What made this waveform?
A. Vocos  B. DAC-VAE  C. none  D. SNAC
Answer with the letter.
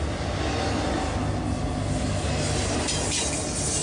C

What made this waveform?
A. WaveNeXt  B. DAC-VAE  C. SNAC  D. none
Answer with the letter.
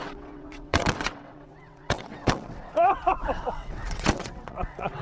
A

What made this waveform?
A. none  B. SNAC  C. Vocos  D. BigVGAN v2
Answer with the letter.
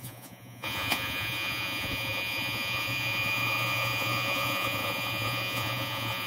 C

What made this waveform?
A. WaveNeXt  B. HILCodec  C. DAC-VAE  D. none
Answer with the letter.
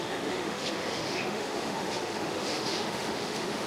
C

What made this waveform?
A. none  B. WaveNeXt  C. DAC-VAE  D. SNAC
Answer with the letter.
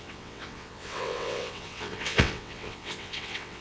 B